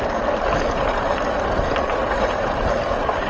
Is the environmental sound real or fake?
real